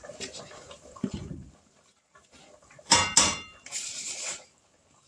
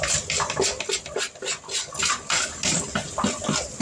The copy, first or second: first